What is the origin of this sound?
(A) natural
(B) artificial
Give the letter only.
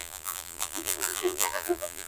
B